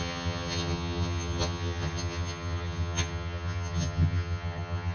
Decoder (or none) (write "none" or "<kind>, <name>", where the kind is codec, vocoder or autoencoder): vocoder, HiFi-GAN